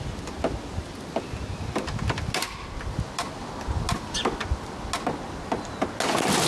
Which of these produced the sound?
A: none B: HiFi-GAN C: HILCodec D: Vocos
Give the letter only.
A